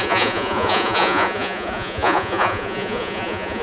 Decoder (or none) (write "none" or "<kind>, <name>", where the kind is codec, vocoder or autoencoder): vocoder, Vocos